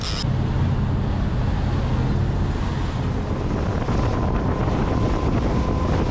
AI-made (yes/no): no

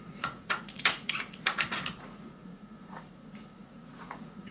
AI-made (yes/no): yes